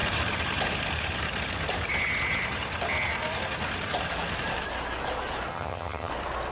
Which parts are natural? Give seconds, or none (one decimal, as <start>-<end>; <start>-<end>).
0.0-5.5; 6.1-6.5